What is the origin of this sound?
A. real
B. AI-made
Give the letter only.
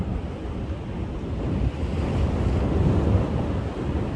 A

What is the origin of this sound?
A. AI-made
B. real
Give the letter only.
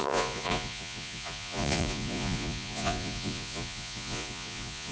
A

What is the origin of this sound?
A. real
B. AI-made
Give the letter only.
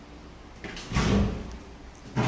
A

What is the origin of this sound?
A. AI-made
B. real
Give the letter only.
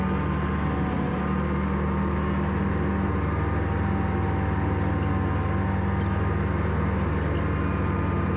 B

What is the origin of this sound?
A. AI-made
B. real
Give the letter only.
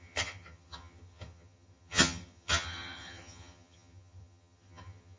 A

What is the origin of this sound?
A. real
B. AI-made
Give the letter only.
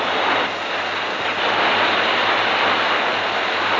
A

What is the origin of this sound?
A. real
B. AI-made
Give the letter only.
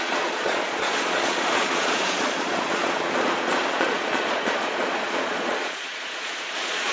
B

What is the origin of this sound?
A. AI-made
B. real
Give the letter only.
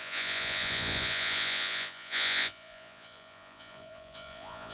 A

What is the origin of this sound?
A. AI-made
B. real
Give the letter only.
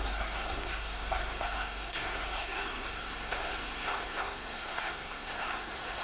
A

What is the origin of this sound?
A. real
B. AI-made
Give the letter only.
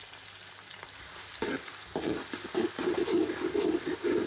A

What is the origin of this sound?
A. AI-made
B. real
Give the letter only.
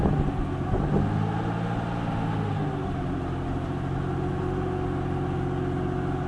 B